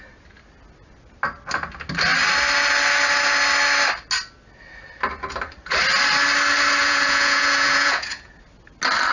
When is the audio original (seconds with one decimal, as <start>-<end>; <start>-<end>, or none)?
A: 0.0-6.8; 8.3-9.1